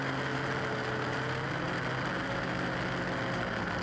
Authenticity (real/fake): real